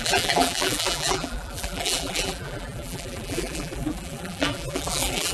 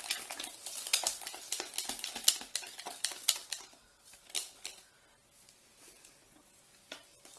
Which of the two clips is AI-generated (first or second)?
first